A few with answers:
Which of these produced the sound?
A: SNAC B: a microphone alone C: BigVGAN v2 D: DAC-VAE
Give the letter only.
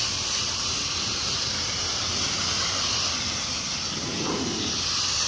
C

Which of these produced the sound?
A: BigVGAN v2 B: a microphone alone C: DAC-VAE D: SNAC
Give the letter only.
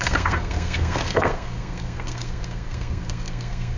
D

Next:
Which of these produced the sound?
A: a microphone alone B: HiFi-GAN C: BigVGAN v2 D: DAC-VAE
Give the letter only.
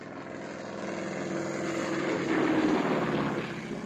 A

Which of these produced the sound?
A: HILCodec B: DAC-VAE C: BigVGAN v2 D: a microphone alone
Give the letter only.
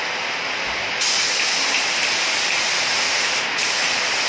D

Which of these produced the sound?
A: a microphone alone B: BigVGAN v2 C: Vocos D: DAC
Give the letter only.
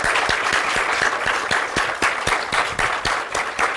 A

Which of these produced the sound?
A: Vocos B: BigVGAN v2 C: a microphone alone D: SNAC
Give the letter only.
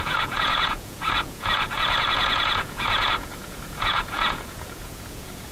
A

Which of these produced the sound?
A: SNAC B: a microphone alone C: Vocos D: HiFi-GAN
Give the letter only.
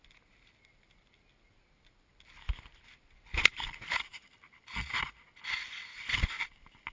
B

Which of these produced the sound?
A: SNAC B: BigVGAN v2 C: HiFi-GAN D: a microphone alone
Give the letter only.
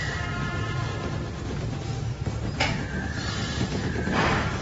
D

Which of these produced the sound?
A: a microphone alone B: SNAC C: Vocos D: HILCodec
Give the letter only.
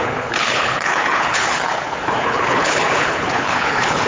D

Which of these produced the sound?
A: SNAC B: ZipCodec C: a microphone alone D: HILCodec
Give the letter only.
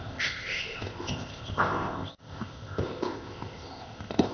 B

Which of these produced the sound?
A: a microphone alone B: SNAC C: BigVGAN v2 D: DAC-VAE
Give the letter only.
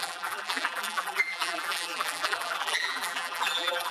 C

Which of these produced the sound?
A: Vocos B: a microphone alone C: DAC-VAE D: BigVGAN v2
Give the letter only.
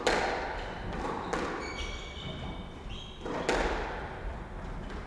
B